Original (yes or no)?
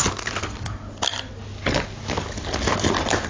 yes